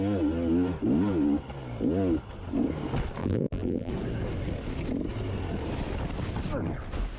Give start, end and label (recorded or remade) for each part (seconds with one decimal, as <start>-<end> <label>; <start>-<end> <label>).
0.0-3.2 recorded; 3.2-3.9 remade; 3.9-7.2 recorded